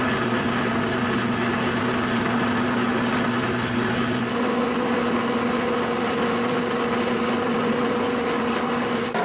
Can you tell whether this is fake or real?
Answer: real